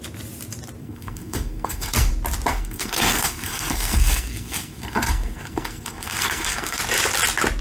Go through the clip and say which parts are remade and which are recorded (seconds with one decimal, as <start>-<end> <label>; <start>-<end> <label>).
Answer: 0.0-0.8 recorded; 0.8-2.1 remade; 2.1-2.5 recorded; 2.5-6.8 remade; 6.8-7.6 recorded

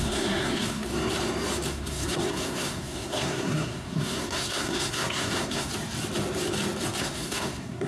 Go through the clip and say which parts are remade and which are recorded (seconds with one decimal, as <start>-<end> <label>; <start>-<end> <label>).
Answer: 0.0-0.9 remade; 0.9-1.7 recorded; 1.7-5.7 remade; 5.7-7.0 recorded; 7.0-7.9 remade

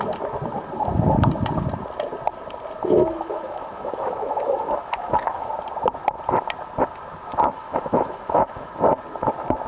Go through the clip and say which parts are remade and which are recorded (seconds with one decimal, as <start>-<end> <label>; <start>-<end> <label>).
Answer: 0.0-3.0 recorded; 3.0-5.5 remade; 5.5-7.3 recorded; 7.3-8.7 remade; 8.7-9.7 recorded

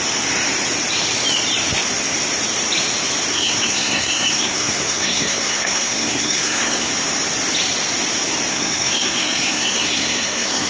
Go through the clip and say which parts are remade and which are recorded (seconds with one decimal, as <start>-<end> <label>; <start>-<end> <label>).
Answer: 0.0-3.3 recorded; 3.3-6.9 remade; 6.9-8.5 recorded; 8.5-10.7 remade

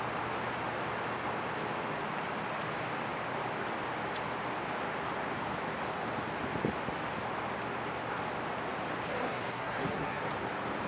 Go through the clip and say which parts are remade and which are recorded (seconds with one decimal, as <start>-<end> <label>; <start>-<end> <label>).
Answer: 0.0-9.2 recorded; 9.2-10.2 remade; 10.2-10.9 recorded

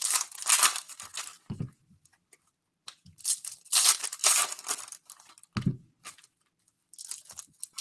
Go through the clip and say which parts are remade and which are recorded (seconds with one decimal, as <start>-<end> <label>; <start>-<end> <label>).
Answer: 0.0-1.3 recorded; 1.3-2.4 remade; 2.4-7.8 recorded